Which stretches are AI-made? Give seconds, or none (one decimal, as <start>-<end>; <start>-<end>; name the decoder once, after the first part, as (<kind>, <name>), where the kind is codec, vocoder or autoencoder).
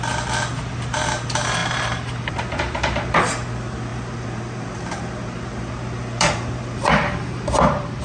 1.6-2.4 (vocoder, BigVGAN v2); 3.9-8.0